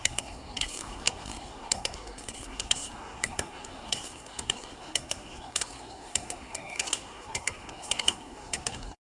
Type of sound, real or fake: fake